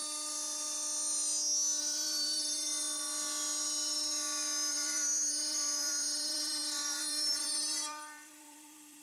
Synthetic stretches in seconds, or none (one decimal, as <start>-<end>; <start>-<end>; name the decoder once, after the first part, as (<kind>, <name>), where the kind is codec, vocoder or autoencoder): 1.8-2.7 (vocoder, BigVGAN v2); 4.7-9.0